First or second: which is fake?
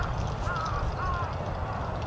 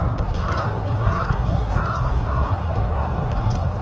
second